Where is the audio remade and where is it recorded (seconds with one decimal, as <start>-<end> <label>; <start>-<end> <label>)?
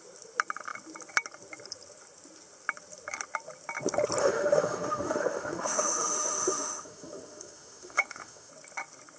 0.0-4.2 recorded; 4.2-8.5 remade; 8.5-9.2 recorded